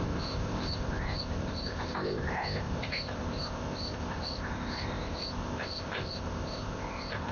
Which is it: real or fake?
fake